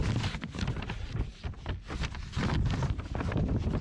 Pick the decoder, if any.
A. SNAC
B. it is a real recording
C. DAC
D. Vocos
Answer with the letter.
B